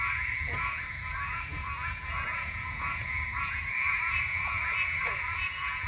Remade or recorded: remade